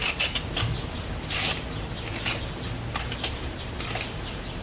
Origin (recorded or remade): remade